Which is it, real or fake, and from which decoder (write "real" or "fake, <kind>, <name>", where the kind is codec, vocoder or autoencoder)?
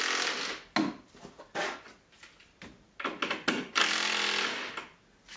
real